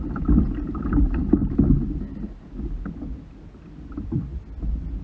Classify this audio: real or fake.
real